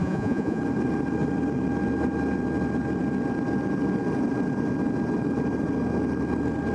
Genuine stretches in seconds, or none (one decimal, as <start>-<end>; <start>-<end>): 0.6-6.7